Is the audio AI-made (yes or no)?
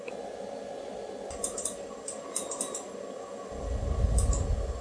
no